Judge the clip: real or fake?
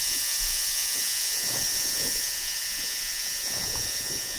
fake